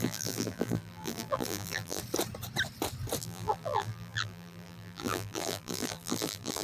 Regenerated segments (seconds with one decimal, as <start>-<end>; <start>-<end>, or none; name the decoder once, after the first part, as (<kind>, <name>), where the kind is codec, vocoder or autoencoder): 0.0-2.0 (vocoder, BigVGAN v2); 3.2-6.6